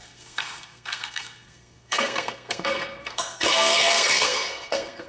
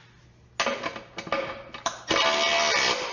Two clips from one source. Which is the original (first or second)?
second